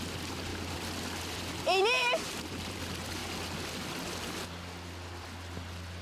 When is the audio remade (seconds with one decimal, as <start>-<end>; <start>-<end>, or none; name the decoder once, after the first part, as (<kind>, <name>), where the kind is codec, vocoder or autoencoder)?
2.0-2.8 (vocoder, BigVGAN v2)